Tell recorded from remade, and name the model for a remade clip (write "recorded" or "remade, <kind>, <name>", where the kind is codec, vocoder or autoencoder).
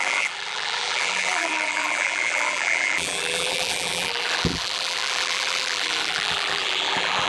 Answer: remade, vocoder, BigVGAN v2